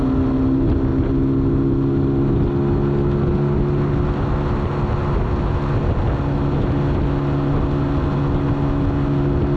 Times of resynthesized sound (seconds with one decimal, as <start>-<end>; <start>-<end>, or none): none